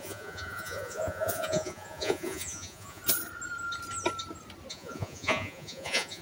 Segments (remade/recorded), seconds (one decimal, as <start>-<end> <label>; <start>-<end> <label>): 0.0-3.0 remade; 3.0-4.7 recorded; 4.7-6.2 remade